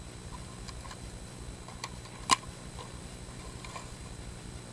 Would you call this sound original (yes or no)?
yes